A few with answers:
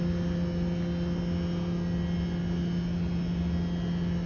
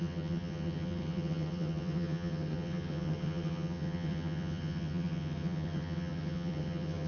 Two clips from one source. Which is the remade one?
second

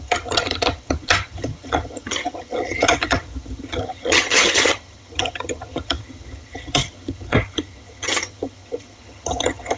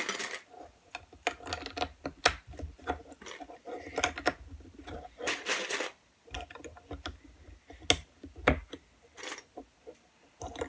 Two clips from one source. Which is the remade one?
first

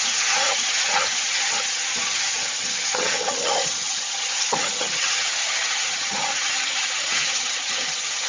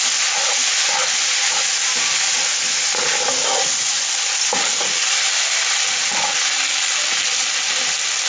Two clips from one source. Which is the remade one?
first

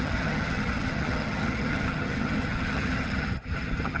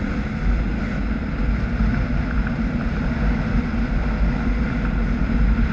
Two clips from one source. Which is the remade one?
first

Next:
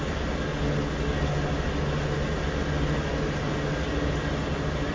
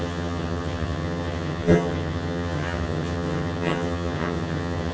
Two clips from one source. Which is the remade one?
second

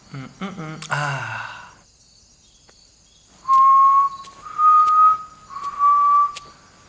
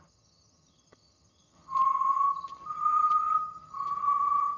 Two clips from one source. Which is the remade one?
second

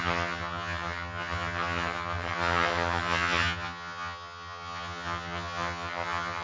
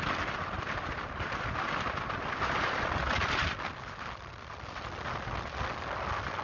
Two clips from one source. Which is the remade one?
first